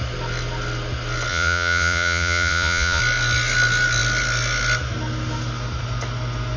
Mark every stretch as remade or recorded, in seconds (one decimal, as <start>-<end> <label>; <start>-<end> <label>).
0.0-1.3 recorded; 1.3-3.0 remade; 3.0-6.6 recorded